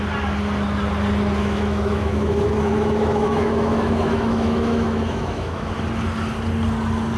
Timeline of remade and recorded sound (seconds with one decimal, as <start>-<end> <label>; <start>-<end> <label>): 0.0-1.4 recorded; 1.4-5.7 remade; 5.7-7.2 recorded